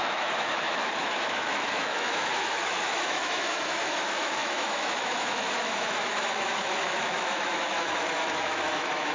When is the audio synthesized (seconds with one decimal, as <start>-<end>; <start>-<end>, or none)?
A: 0.0-9.1